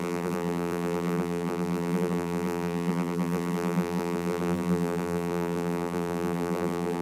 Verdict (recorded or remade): remade